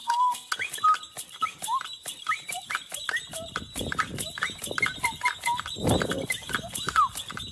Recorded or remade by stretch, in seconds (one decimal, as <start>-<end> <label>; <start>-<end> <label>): 0.0-0.5 remade; 0.5-7.5 recorded